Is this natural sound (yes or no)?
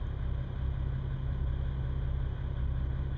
yes